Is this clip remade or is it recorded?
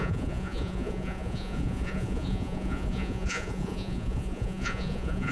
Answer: remade